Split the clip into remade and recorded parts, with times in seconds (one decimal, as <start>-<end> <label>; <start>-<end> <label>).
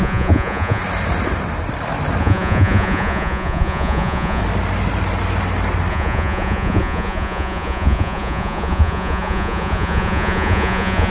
0.0-0.8 remade; 0.8-2.2 recorded; 2.2-4.4 remade; 4.4-5.9 recorded; 5.9-11.1 remade